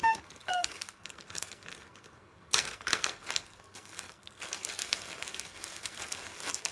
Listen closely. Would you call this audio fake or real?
fake